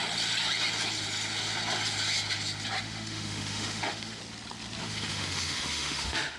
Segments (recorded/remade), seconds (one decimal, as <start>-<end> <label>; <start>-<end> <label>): 0.0-2.8 recorded; 2.8-4.2 remade; 4.2-4.8 recorded; 4.8-6.4 remade

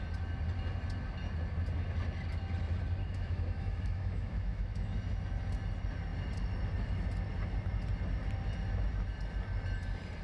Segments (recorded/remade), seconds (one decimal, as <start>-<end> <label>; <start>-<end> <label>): 0.0-3.0 recorded; 3.0-4.9 remade; 4.9-10.2 recorded

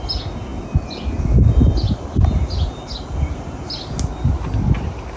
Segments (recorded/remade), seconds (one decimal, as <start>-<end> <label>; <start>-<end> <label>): 0.0-5.2 recorded

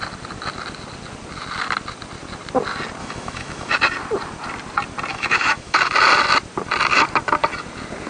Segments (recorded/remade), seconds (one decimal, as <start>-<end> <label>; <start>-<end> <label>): 0.0-3.0 recorded; 3.0-3.7 remade; 3.7-5.1 recorded; 5.1-5.9 remade; 5.9-8.1 recorded